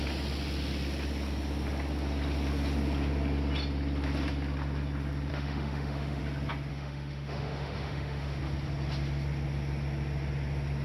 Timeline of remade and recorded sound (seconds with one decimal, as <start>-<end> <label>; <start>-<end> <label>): 0.0-5.3 recorded; 5.3-6.2 remade; 6.2-6.7 recorded; 6.7-8.4 remade; 8.4-10.8 recorded